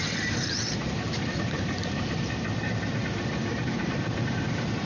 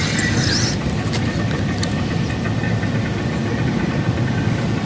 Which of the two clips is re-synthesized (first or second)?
first